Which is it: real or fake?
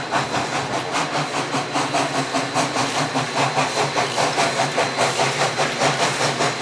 real